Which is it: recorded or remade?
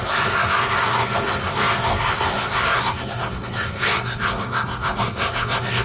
remade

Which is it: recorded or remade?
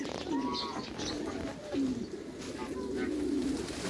recorded